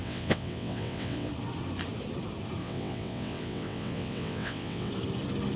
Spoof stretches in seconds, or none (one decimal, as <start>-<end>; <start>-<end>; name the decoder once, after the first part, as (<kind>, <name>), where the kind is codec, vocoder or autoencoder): 0.0-1.3 (vocoder, WaveNeXt); 2.6-4.9

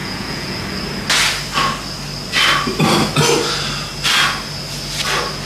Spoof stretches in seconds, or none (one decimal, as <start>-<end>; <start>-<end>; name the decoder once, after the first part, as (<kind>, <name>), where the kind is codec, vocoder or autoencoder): 0.0-0.6 (vocoder, Vocos)

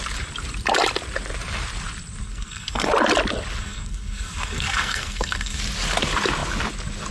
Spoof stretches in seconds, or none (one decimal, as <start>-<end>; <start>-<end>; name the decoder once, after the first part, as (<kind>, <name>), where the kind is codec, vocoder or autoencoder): 2.2-2.9 (codec, SNAC); 3.6-5.6